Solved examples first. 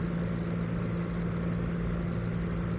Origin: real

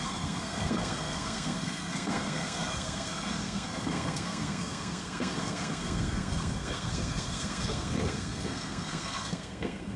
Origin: fake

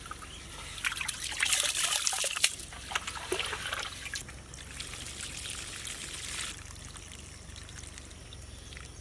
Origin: real